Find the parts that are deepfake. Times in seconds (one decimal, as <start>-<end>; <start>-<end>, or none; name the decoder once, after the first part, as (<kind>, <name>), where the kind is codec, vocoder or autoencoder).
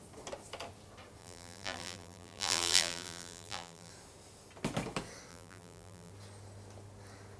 1.2-3.9 (vocoder, BigVGAN v2); 5.3-6.1